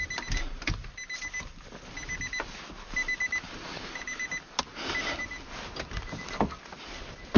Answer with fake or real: real